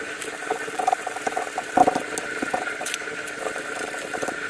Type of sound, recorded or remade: remade